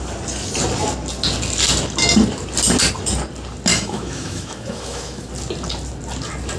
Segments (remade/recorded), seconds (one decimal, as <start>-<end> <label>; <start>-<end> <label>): 0.0-3.7 recorded; 3.7-5.3 remade; 5.3-6.6 recorded